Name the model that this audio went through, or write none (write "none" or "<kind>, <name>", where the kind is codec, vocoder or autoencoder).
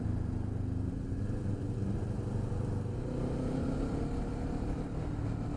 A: none